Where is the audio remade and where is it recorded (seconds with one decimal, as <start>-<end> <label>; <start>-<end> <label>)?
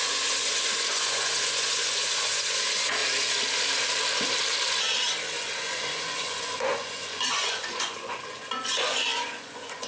0.0-3.0 remade; 3.0-5.4 recorded; 5.4-9.9 remade